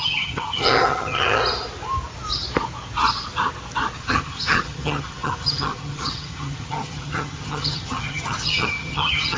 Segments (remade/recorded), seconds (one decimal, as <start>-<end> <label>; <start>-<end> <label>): 0.0-1.4 remade; 1.4-4.0 recorded; 4.0-9.4 remade